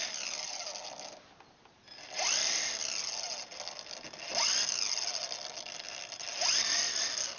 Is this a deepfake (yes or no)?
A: no